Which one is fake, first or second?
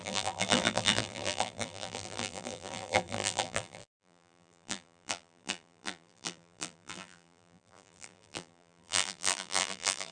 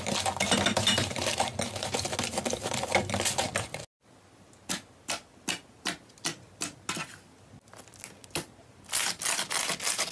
first